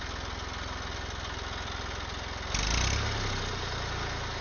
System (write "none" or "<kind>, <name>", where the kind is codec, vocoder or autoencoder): none